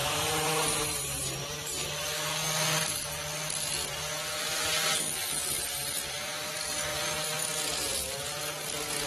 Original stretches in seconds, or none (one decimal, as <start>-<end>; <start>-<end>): 1.9-9.1